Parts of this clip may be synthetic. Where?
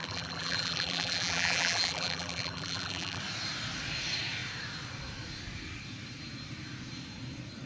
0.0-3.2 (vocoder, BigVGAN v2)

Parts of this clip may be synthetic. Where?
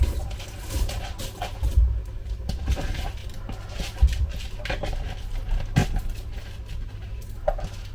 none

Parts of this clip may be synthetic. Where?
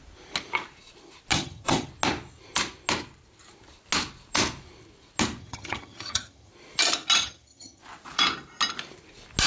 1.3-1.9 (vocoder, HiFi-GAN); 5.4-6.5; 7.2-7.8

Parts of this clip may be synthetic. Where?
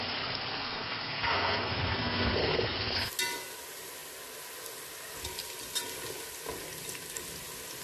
0.5-3.1 (codec, SNAC)